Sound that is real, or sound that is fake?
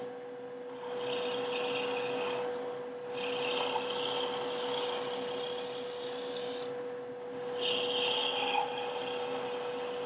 real